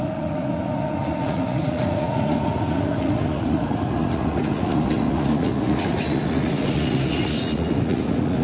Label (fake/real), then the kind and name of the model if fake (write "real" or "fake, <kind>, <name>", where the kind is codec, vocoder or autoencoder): fake, vocoder, Vocos